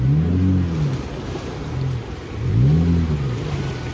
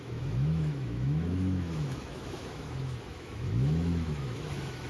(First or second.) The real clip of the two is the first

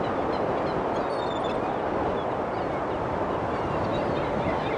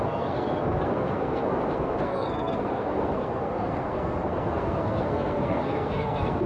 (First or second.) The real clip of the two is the first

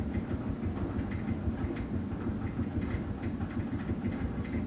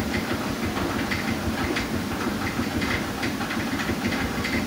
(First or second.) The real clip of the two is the first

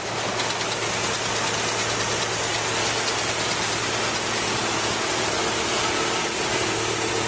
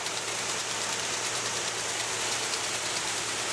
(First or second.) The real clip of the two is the first